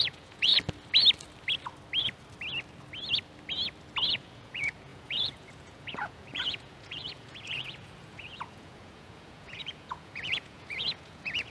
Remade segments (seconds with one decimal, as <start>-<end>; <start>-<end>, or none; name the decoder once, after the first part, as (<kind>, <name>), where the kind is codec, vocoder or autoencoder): 0.0-0.5 (vocoder, Vocos); 4.1-11.5